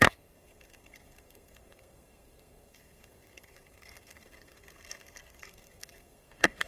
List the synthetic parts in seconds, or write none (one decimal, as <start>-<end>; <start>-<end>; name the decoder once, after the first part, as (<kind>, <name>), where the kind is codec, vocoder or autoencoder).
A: 0.0-6.7 (codec, SNAC)